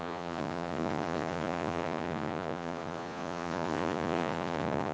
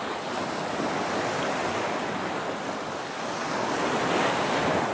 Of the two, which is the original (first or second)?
second